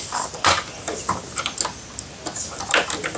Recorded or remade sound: recorded